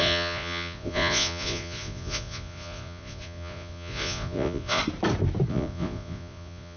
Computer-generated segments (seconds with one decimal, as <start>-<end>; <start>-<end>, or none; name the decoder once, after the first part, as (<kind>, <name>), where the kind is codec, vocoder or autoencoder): 0.0-4.8 (vocoder, Vocos); 5.5-6.8